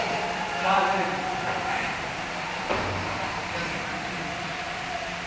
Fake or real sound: fake